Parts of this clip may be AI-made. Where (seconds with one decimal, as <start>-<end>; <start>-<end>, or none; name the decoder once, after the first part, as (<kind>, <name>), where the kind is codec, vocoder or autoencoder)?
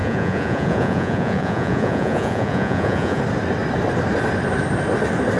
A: 0.0-3.2 (vocoder, Vocos)